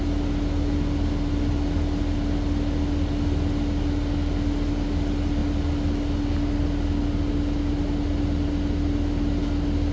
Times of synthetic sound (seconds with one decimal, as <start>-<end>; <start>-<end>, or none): none

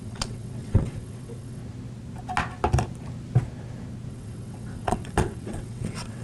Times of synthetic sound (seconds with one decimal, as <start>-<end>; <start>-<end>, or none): 0.0-1.6; 4.1-6.2

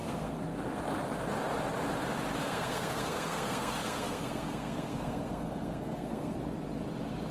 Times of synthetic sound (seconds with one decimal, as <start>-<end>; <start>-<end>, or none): 0.0-0.8; 2.4-6.4

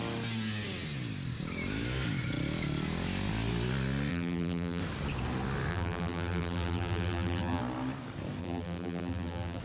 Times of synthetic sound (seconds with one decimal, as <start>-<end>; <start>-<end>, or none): 4.1-4.8; 5.7-7.6; 8.4-9.6

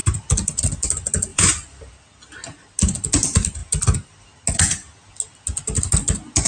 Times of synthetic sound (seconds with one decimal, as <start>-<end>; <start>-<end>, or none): 0.0-0.9; 1.3-1.9

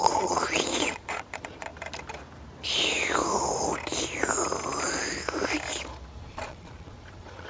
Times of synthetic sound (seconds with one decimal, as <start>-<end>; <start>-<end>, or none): 0.0-1.7; 6.2-7.5

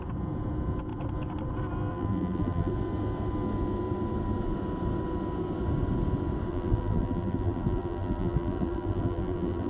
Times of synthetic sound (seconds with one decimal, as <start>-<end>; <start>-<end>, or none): 1.9-2.7; 6.5-9.7